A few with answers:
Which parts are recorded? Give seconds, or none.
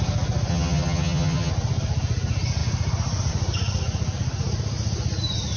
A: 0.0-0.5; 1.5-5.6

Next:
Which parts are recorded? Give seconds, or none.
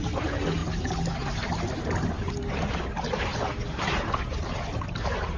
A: 0.0-5.4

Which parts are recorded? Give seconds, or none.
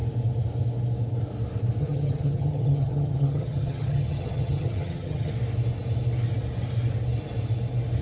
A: 0.0-1.8; 5.3-8.0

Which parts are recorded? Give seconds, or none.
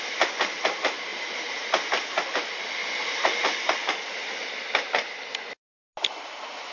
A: 0.0-6.7